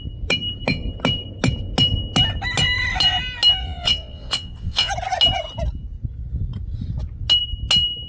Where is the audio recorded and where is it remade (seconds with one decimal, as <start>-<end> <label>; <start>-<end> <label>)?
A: 0.0-3.6 recorded; 3.6-4.9 remade; 4.9-8.1 recorded